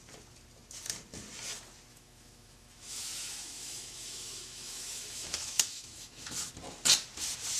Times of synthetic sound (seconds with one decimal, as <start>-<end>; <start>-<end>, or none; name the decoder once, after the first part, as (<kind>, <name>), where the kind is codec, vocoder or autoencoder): 1.9-6.5 (autoencoder, DAC-VAE)